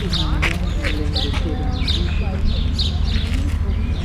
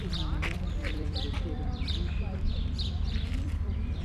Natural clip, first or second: first